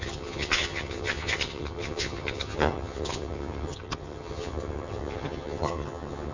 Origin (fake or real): fake